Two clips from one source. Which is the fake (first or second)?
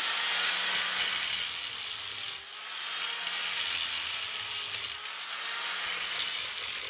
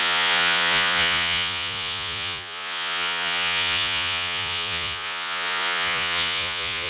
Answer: second